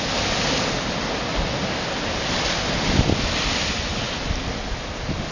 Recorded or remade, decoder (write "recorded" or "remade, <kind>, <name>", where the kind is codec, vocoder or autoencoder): recorded